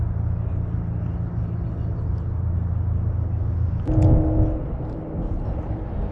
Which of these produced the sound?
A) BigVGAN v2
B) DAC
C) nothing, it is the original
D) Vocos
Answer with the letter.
C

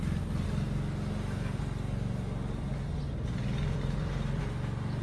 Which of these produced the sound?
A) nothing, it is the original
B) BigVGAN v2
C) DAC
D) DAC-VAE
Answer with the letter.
A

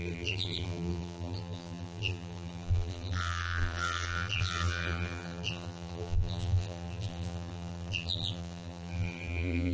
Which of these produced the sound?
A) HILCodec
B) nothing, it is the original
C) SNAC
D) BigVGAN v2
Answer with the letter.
D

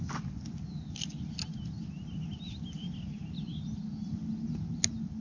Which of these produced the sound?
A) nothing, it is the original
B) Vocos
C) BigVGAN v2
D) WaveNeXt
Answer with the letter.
A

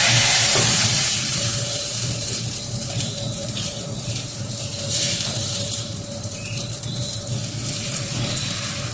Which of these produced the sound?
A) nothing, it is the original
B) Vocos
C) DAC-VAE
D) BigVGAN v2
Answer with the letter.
D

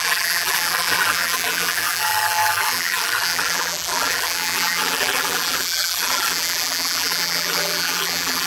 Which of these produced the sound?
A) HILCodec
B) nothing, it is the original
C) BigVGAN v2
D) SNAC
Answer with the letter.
C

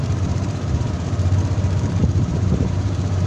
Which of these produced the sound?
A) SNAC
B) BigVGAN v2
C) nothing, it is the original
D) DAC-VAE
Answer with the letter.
B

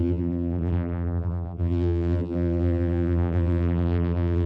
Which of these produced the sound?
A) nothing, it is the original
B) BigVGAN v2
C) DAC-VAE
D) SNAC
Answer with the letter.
B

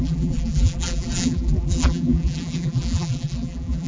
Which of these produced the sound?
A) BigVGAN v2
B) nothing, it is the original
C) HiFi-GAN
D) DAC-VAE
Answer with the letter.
A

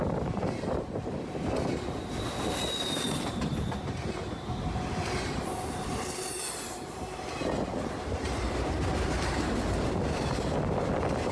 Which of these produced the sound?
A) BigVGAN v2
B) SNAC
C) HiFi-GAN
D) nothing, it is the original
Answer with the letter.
D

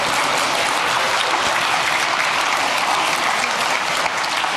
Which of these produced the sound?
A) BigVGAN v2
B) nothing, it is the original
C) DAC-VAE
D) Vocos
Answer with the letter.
B